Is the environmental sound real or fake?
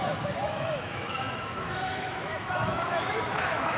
fake